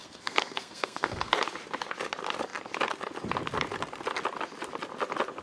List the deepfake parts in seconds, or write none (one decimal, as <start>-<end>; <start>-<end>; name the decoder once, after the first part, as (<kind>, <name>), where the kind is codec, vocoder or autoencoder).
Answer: 0.0-1.3 (codec, SNAC)